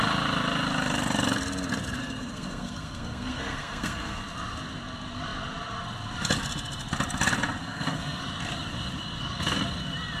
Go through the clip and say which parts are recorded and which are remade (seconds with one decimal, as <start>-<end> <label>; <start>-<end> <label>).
0.0-2.0 recorded; 2.0-4.2 remade; 4.2-7.6 recorded; 7.6-8.2 remade; 8.2-10.2 recorded